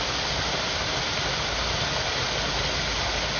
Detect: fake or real real